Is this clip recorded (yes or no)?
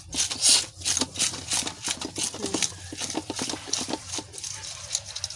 yes